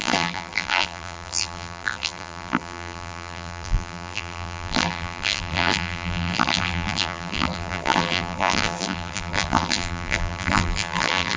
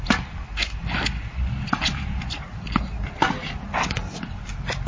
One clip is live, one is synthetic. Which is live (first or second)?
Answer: second